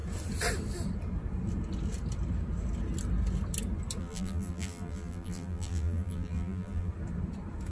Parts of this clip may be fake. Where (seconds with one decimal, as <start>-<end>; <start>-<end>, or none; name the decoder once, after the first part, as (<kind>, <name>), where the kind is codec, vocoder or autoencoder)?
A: 4.0-6.9 (vocoder, BigVGAN v2)